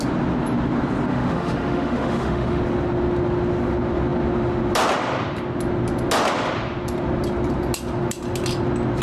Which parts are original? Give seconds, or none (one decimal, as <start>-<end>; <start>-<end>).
0.0-1.1; 2.6-9.0